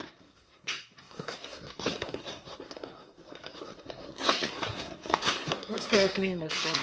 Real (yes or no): no